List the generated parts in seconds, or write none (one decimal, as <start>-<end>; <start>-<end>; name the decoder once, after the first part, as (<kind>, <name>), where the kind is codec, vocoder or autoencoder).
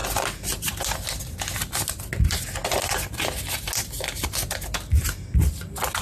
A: none